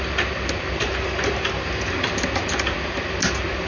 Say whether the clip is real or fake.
real